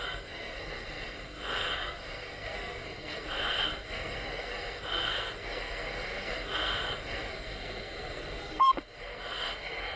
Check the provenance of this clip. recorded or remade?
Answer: remade